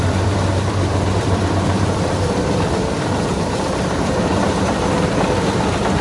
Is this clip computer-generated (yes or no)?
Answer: yes